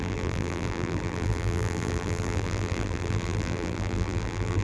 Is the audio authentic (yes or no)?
no